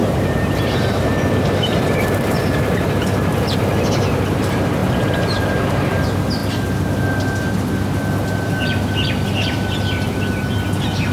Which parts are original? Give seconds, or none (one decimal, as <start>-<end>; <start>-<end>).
3.9-4.8; 6.0-11.1